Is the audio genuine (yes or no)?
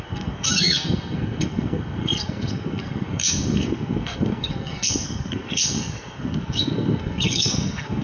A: no